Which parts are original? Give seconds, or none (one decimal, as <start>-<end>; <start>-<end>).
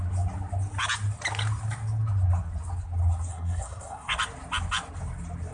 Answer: 0.0-3.3; 4.1-5.5